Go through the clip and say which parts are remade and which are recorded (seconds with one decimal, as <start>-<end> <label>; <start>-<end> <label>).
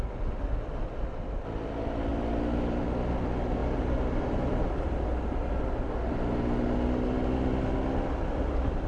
0.0-2.1 recorded; 2.1-2.8 remade; 2.8-3.6 recorded; 3.6-4.9 remade; 4.9-8.9 recorded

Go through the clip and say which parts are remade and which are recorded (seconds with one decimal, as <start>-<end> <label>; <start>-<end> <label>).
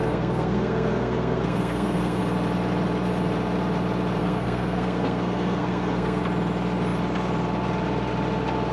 0.0-2.2 remade; 2.2-4.2 recorded; 4.2-6.2 remade; 6.2-8.7 recorded